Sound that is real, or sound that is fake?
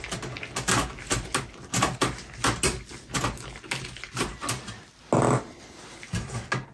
real